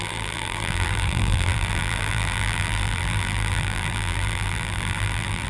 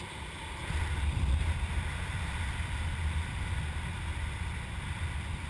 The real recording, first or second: second